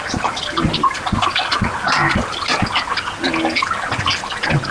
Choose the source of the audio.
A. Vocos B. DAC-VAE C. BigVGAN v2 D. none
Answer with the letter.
D